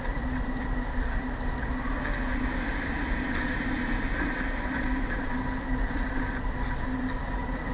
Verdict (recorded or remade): remade